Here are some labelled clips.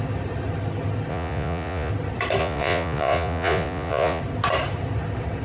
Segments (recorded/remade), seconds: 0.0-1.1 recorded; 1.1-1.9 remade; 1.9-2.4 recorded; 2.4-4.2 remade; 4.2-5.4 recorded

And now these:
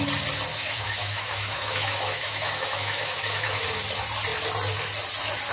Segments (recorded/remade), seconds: 0.0-0.5 recorded; 0.5-3.8 remade; 3.8-5.5 recorded

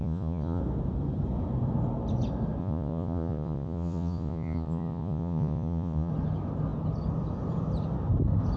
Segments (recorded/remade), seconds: 0.0-0.6 remade; 0.6-2.6 recorded; 2.6-6.1 remade; 6.1-8.6 recorded